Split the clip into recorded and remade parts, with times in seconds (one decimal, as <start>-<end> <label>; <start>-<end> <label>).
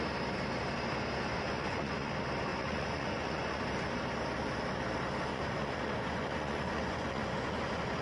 0.0-1.3 recorded; 1.3-2.1 remade; 2.1-2.5 recorded; 2.5-3.6 remade; 3.6-5.3 recorded; 5.3-8.0 remade